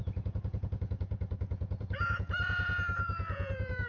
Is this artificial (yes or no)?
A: yes